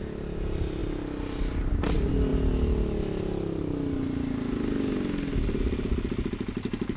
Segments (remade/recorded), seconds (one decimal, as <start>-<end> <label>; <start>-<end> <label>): 0.0-7.0 recorded